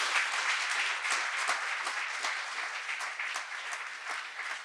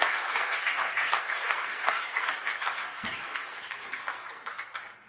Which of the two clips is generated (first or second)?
second